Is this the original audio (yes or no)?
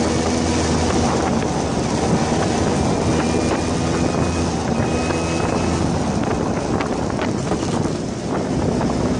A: yes